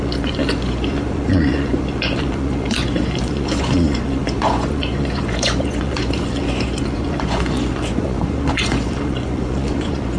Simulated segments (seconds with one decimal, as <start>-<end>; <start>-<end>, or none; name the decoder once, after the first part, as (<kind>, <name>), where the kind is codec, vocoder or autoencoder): 0.0-10.2 (vocoder, Vocos)